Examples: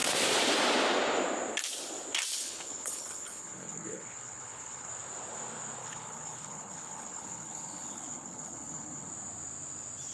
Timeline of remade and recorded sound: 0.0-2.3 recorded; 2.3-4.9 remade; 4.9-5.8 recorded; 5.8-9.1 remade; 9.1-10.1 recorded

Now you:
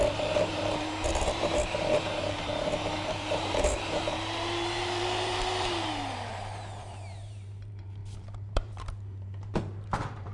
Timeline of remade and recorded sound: 0.0-10.3 remade

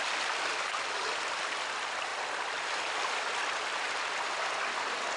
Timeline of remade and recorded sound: 0.0-5.2 recorded